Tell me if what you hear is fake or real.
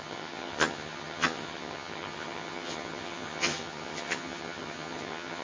fake